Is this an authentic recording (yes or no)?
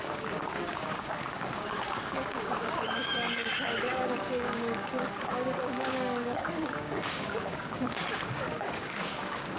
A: no